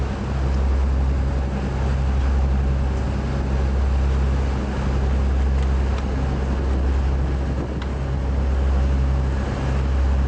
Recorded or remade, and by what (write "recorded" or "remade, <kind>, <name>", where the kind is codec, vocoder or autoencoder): recorded